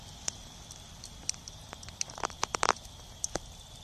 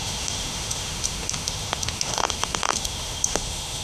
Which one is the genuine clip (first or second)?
first